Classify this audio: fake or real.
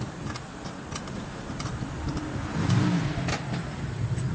fake